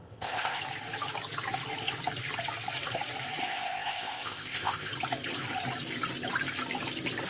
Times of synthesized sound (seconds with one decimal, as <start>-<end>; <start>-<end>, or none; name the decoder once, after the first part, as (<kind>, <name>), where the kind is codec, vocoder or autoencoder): 0.0-0.6 (codec, ZipCodec); 3.4-4.9